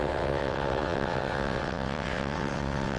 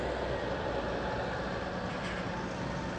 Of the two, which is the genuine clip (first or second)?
second